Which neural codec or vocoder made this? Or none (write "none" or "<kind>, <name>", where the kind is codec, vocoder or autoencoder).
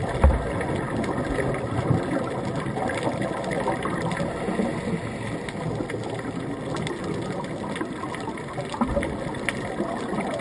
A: none